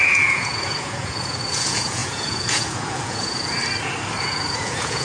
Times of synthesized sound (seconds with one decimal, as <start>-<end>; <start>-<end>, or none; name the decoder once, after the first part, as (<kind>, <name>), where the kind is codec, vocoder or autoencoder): 0.0-3.6 (vocoder, Vocos); 4.2-5.0